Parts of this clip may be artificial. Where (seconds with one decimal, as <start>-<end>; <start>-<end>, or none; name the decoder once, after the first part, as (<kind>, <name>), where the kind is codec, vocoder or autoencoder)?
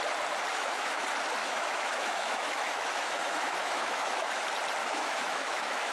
0.5-1.0 (autoencoder, DAC-VAE); 1.4-4.3; 4.8-5.9